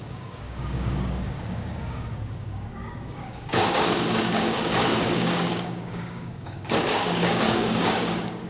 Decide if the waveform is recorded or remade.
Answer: remade